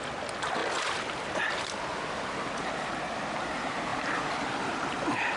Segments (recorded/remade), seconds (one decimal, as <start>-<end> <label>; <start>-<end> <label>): 0.0-5.4 recorded